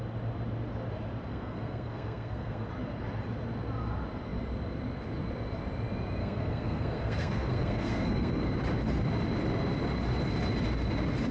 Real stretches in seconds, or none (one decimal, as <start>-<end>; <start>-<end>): 0.0-1.3; 2.7-6.2; 8.5-11.3